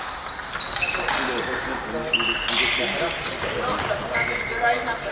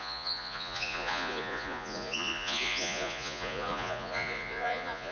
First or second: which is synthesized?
second